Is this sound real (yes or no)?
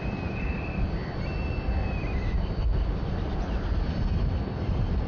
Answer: no